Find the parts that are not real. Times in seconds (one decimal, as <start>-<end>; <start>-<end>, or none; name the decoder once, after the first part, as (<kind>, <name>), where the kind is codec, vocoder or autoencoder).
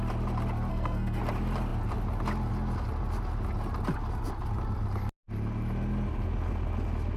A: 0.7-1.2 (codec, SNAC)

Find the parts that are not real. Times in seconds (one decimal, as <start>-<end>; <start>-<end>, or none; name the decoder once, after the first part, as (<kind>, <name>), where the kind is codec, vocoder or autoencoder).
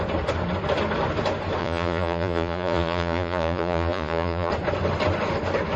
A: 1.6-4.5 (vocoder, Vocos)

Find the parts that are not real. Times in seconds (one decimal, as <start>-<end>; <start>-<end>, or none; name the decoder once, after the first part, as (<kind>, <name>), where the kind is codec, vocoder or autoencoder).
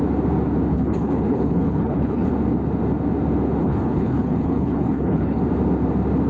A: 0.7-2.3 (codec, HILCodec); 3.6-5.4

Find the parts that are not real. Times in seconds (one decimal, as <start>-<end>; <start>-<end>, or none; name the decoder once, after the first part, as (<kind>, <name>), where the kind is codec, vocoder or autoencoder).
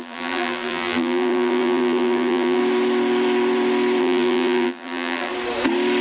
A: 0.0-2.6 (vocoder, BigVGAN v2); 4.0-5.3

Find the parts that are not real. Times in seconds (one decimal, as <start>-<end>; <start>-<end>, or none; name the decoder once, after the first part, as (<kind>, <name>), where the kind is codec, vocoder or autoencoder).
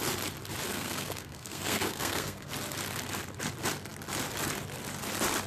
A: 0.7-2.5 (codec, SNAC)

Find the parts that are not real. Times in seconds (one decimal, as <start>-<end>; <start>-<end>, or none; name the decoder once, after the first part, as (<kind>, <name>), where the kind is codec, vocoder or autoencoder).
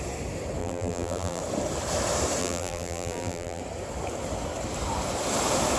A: 0.6-1.4 (vocoder, BigVGAN v2); 2.4-3.6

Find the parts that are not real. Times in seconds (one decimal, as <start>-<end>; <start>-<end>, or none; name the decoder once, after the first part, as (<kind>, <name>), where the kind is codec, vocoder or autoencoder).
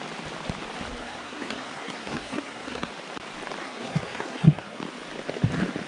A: 1.0-2.9 (codec, SNAC); 3.6-4.8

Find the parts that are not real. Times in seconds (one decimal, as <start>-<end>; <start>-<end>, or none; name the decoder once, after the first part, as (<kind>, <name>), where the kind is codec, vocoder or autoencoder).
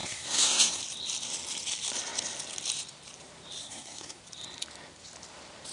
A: 0.0-0.8 (codec, SNAC); 3.6-4.2